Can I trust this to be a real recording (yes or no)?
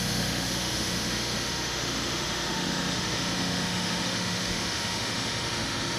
no